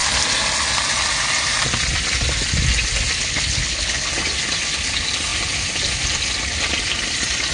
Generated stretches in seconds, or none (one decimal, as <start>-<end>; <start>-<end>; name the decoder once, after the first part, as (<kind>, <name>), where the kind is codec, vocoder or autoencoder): 3.2-4.1 (codec, HILCodec)